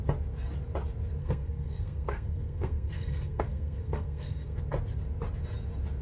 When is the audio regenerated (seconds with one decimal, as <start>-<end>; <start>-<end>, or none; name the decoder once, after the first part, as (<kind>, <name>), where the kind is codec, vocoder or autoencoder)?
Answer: 1.2-4.6 (codec, SNAC)